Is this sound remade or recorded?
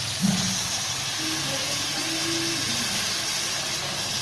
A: recorded